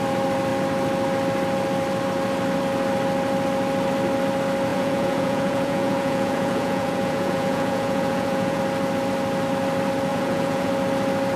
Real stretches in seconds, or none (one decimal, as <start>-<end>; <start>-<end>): 0.0-4.7; 8.6-10.1; 10.7-11.4